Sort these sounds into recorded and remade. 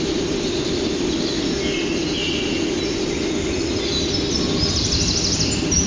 recorded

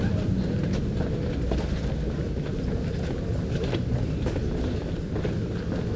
recorded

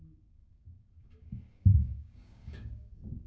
remade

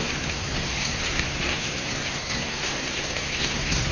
remade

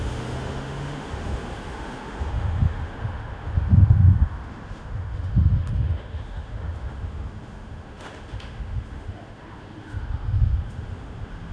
remade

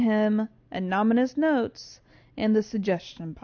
recorded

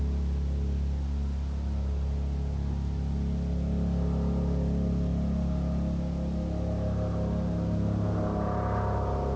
recorded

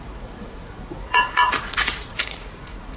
remade